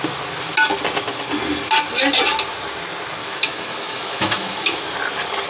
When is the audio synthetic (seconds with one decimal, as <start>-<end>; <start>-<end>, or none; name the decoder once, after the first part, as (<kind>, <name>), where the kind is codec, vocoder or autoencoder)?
3.2-4.8 (autoencoder, DAC-VAE)